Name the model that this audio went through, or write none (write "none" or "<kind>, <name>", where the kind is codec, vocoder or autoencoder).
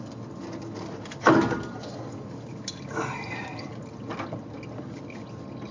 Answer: none